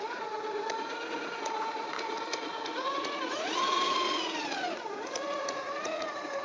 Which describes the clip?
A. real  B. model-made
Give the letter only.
B